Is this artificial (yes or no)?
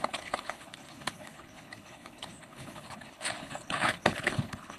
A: yes